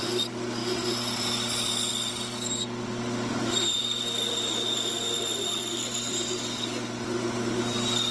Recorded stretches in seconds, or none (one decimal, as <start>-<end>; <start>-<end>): 0.0-8.1